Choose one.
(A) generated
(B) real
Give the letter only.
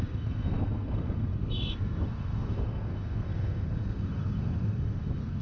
A